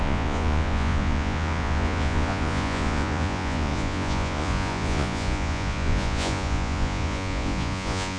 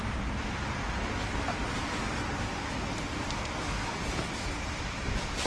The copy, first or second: first